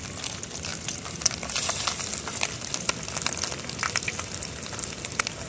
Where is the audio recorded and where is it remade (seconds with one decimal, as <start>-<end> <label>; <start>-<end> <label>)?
0.0-5.5 recorded